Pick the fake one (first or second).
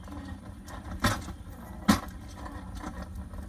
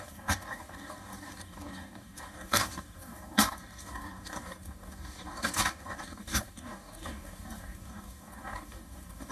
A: second